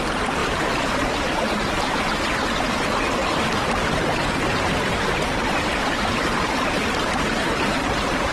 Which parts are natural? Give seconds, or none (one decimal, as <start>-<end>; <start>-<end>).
0.0-0.4; 2.0-4.5; 6.9-8.3